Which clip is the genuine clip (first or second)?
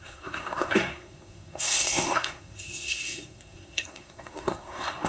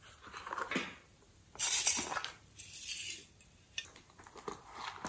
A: second